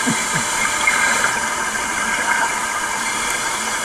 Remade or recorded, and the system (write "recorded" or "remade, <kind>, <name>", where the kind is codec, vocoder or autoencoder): remade, vocoder, BigVGAN v2